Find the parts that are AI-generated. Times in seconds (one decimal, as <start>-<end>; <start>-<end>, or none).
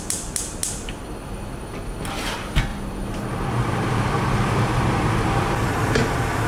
2.7-5.7